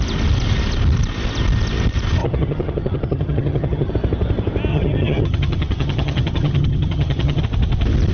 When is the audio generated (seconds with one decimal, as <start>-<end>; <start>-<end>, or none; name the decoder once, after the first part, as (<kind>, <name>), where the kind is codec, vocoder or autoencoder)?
2.2-3.9 (vocoder, HiFi-GAN); 4.7-7.4

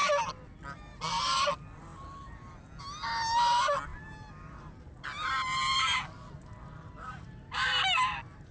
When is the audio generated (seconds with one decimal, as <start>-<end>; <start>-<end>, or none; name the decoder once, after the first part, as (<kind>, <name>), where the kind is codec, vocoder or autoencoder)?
none

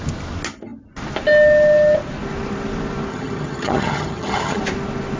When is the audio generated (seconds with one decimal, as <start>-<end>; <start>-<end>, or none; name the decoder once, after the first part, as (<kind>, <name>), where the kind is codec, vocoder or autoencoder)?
3.1-4.6 (vocoder, HiFi-GAN)

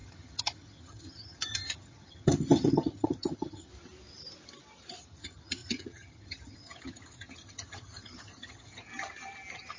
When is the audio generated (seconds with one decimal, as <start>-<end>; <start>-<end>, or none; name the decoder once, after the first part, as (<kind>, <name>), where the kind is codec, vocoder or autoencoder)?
0.0-3.7 (vocoder, HiFi-GAN); 5.0-8.9

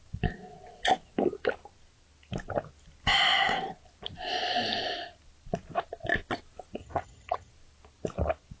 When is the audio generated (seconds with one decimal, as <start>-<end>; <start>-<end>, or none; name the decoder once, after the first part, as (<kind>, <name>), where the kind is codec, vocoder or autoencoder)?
6.8-7.5 (vocoder, HiFi-GAN)